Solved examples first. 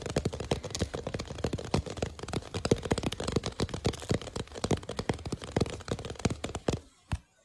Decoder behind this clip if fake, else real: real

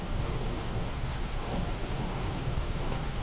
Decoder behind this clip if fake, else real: fake, codec, DAC